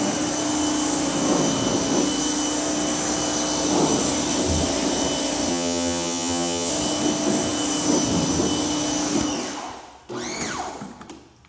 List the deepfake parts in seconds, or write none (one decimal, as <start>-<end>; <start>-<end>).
5.5-6.7